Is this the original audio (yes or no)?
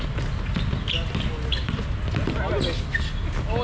yes